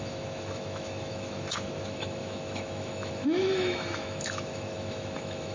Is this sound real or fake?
fake